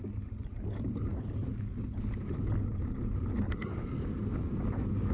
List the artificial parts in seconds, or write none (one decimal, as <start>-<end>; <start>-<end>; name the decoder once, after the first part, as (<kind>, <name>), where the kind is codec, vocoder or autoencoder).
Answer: none